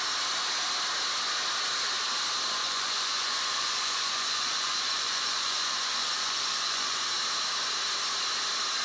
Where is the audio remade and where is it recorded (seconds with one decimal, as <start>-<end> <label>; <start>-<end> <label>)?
0.0-2.6 recorded; 2.6-7.0 remade; 7.0-8.8 recorded